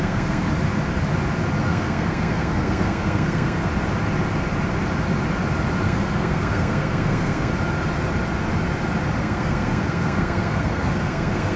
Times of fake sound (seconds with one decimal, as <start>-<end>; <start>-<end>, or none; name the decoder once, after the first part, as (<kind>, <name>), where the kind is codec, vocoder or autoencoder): 0.0-0.5 (codec, SNAC); 1.6-3.7; 5.8-7.5; 9.2-11.6